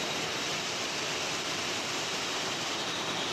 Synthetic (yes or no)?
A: yes